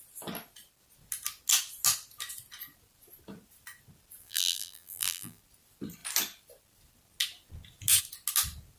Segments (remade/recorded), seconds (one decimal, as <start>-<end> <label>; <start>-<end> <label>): 0.0-4.2 recorded; 4.2-5.4 remade; 5.4-8.8 recorded